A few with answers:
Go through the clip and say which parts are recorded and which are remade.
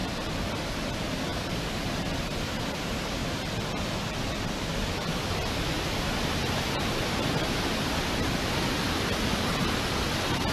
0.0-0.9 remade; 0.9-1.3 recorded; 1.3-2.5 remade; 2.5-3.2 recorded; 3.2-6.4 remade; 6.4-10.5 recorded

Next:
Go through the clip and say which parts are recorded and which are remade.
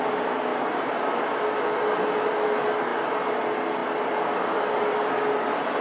0.0-0.5 recorded; 0.5-1.9 remade; 1.9-2.9 recorded; 2.9-3.4 remade; 3.4-3.8 recorded; 3.8-4.7 remade; 4.7-5.8 recorded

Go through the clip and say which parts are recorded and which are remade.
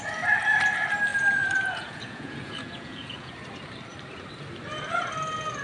0.0-1.1 recorded; 1.1-3.3 remade; 3.3-5.6 recorded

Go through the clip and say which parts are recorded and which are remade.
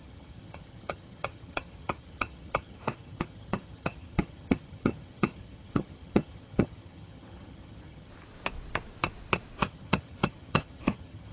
0.0-8.1 remade; 8.1-9.6 recorded; 9.6-11.3 remade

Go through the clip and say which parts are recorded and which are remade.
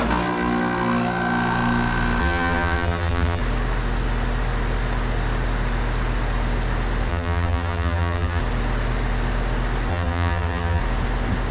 0.0-2.2 recorded; 2.2-3.4 remade; 3.4-7.1 recorded; 7.1-8.4 remade; 8.4-9.9 recorded; 9.9-10.8 remade; 10.8-11.5 recorded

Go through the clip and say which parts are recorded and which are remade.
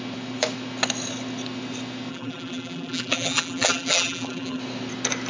0.0-2.1 recorded; 2.1-4.6 remade; 4.6-5.3 recorded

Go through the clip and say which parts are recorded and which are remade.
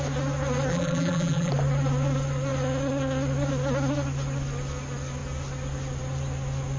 0.0-0.7 recorded; 0.7-1.5 remade; 1.5-6.8 recorded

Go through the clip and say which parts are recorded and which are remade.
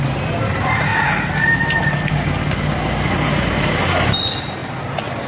0.0-5.3 recorded